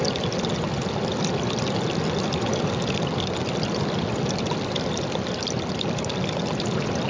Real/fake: real